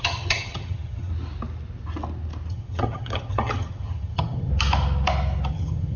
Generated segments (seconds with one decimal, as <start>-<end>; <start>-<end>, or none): 0.0-1.1; 2.5-4.5; 5.5-6.0